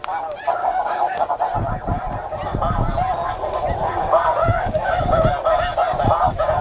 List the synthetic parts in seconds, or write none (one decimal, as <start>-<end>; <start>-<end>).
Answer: 0.6-1.3; 4.4-5.1